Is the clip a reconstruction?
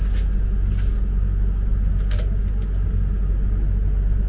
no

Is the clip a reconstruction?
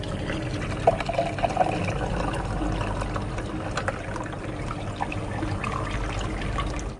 no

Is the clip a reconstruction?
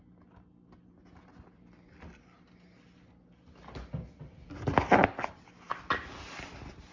no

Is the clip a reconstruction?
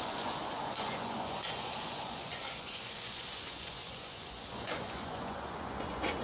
yes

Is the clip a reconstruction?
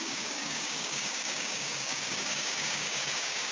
yes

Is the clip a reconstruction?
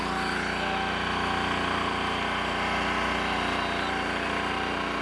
no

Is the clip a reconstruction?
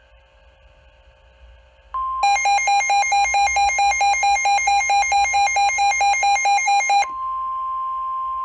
no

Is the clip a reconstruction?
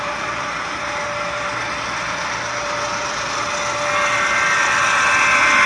no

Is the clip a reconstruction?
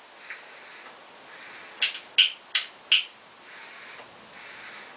no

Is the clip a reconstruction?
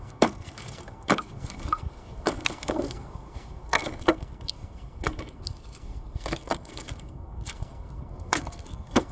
yes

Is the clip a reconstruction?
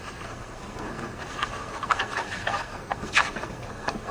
yes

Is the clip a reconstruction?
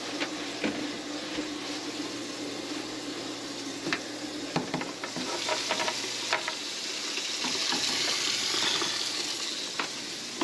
no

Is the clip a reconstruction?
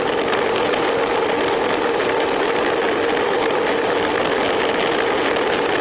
no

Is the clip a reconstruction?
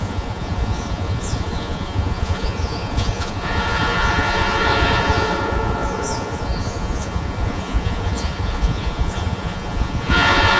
yes